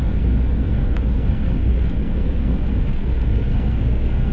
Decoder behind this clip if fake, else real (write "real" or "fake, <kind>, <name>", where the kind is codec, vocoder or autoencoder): fake, codec, SNAC